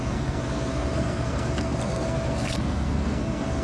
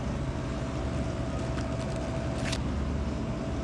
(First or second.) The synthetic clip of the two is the first